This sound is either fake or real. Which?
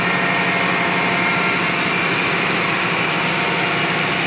real